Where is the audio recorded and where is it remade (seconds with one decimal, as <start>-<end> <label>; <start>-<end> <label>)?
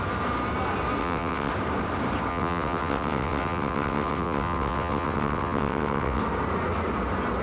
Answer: 0.0-1.0 recorded; 1.0-1.5 remade; 1.5-2.3 recorded; 2.3-6.2 remade; 6.2-7.4 recorded